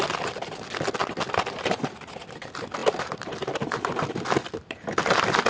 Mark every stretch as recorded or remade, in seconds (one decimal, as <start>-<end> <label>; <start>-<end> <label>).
0.0-5.5 recorded